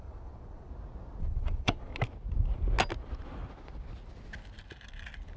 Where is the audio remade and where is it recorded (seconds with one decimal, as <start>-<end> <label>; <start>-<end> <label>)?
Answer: 0.0-0.7 remade; 0.7-1.2 recorded; 1.2-1.9 remade; 1.9-5.4 recorded